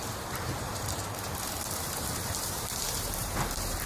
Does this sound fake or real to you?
fake